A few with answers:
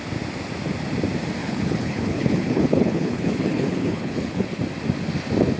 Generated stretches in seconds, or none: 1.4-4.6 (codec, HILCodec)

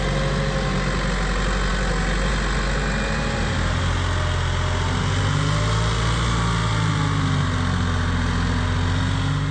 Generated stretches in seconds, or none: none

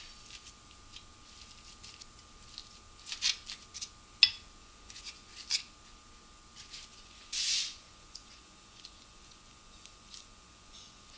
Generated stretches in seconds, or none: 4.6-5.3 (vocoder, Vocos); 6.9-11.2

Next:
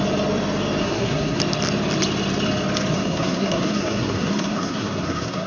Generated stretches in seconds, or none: 0.8-1.4 (codec, SNAC); 2.9-5.5

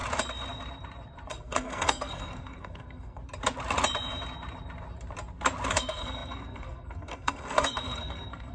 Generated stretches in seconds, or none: 1.3-3.2 (codec, SNAC); 5.7-8.5

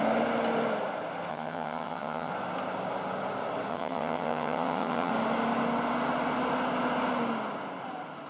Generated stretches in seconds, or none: 1.3-2.3 (vocoder, HiFi-GAN); 3.7-5.1

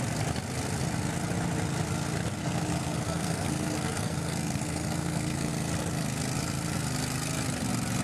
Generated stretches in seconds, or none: 2.4-5.5 (codec, SNAC)

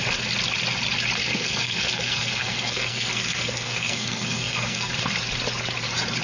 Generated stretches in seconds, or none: 1.2-4.9 (codec, SNAC)